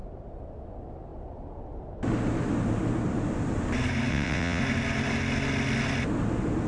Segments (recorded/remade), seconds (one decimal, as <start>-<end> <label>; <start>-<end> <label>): 0.0-4.1 recorded; 4.1-4.6 remade; 4.6-6.7 recorded